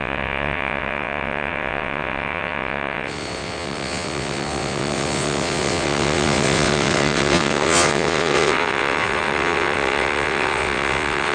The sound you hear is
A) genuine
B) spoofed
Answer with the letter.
B